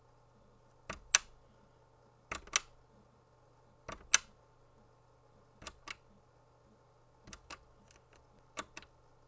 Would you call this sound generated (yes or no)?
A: no